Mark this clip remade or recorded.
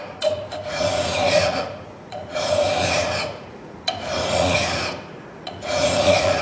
remade